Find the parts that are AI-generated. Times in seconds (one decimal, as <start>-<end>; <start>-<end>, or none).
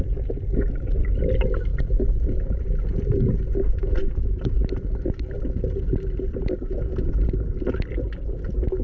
none